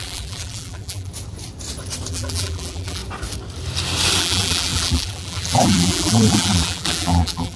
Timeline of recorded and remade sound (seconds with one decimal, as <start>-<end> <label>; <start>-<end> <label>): 0.0-1.1 remade; 1.1-2.1 recorded; 2.1-3.0 remade; 3.0-4.2 recorded; 4.2-7.6 remade